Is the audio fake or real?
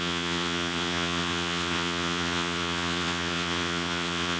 fake